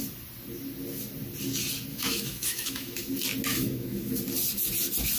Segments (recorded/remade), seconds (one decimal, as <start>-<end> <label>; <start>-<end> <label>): 0.0-1.9 recorded; 1.9-3.1 remade; 3.1-3.5 recorded; 3.5-4.1 remade; 4.1-5.2 recorded

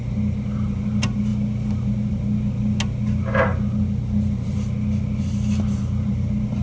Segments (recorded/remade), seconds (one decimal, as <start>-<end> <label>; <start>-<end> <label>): 0.0-6.6 recorded

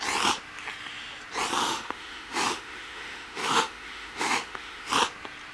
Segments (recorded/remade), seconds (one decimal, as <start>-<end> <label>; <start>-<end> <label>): 0.0-1.6 recorded; 1.6-4.9 remade; 4.9-5.5 recorded

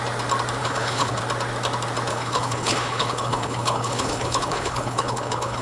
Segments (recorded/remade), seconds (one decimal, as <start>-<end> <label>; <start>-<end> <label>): 0.0-0.6 recorded; 0.6-1.2 remade; 1.2-2.1 recorded; 2.1-5.6 remade

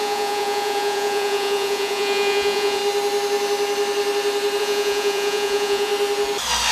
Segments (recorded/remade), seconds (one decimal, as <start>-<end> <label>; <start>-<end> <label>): 0.0-2.8 remade; 2.8-4.6 recorded; 4.6-5.9 remade; 5.9-6.7 recorded

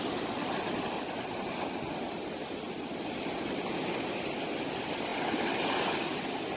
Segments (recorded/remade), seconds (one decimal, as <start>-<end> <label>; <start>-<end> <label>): 0.0-6.6 recorded